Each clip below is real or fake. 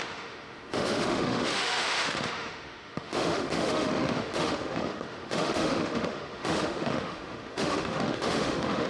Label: fake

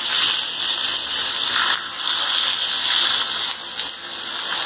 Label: real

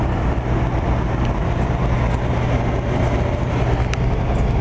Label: real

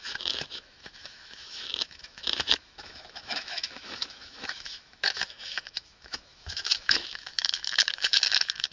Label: fake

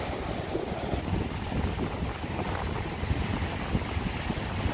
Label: real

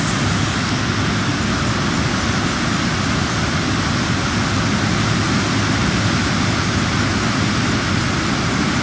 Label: real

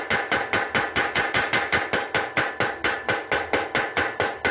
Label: real